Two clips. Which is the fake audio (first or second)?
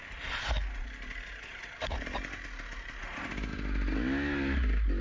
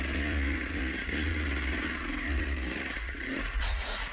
second